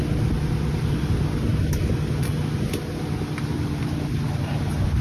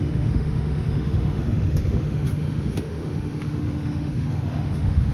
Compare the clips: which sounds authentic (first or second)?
first